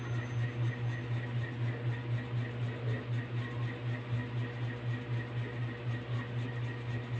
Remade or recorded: recorded